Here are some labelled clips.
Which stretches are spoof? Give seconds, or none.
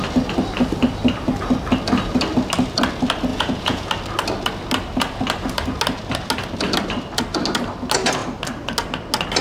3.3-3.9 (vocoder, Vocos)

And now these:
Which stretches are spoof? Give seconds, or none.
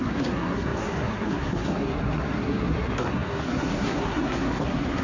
0.0-5.0 (codec, SNAC)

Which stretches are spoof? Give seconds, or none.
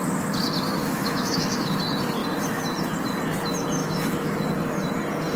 0.8-1.8 (autoencoder, DAC-VAE); 3.8-4.5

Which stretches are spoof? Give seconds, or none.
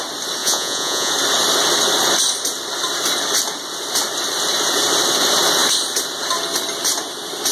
0.4-1.1 (vocoder, Vocos)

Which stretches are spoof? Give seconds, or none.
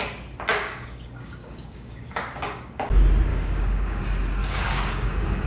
0.5-2.9 (codec, DAC); 3.3-4.0; 4.4-5.5